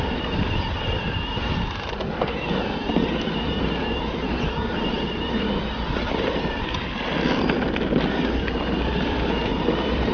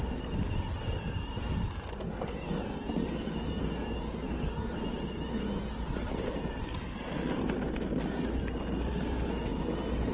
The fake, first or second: first